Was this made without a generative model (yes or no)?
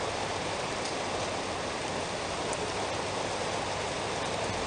yes